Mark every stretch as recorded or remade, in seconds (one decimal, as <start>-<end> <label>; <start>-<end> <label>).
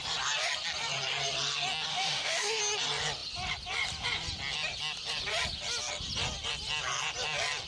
0.0-1.9 recorded; 1.9-2.6 remade; 2.6-7.7 recorded